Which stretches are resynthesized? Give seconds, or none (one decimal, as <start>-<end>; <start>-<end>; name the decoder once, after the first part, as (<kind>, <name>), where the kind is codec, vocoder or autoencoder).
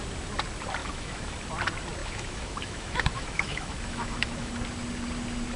0.8-1.3 (autoencoder, DAC-VAE); 2.0-4.5